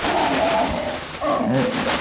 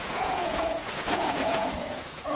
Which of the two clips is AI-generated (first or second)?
second